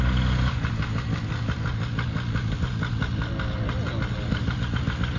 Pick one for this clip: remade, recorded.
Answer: recorded